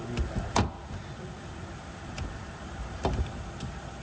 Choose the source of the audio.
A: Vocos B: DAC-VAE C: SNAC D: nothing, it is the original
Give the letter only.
D